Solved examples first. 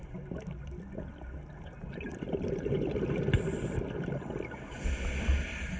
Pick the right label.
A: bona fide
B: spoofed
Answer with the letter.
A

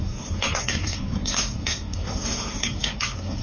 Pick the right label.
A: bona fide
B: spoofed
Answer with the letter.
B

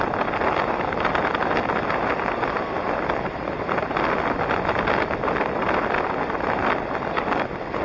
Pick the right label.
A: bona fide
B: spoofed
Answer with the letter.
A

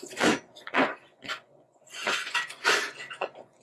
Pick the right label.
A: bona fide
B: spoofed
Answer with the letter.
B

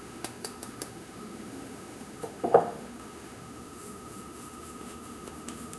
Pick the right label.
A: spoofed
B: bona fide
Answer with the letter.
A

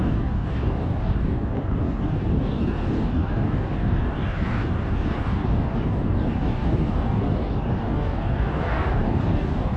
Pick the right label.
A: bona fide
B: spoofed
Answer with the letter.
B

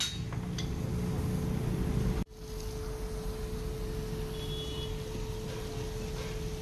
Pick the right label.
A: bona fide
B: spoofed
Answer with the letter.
A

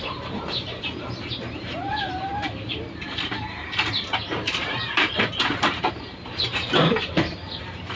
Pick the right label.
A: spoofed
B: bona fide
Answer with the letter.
A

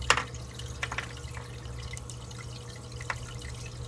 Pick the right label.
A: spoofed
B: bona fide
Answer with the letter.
B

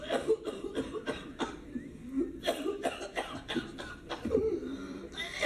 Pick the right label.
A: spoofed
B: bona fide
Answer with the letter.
A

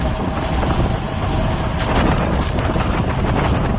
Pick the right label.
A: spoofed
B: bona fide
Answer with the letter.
B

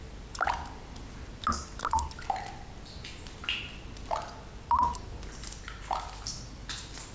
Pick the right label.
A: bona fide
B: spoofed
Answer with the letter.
A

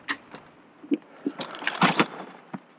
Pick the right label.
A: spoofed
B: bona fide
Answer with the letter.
B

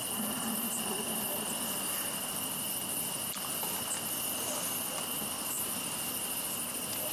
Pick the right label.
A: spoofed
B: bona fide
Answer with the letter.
B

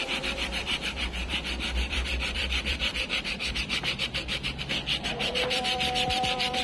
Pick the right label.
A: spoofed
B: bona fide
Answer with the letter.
A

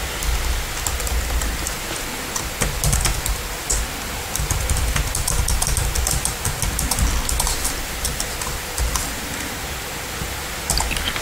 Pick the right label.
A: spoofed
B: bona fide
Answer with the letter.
B